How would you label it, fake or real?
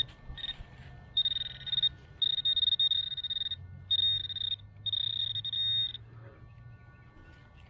real